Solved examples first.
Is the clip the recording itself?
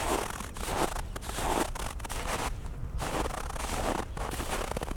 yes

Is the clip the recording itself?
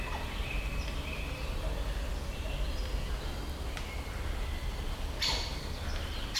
yes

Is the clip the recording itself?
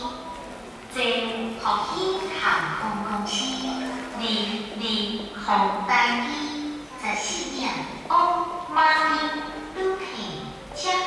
yes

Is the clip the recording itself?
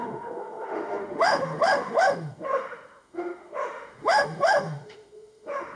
no